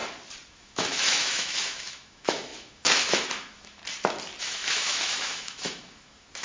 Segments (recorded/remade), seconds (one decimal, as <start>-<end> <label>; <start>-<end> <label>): 0.0-0.5 recorded; 0.5-3.8 remade; 3.8-4.4 recorded; 4.4-6.4 remade